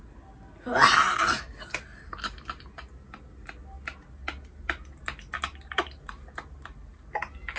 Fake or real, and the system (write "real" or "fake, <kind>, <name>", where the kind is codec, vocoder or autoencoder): real